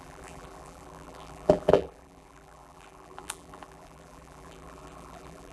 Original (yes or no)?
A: no